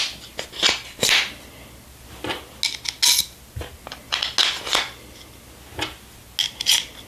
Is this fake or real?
real